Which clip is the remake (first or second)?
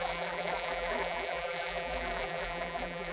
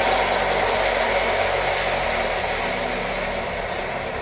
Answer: first